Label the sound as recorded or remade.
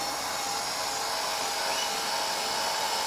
recorded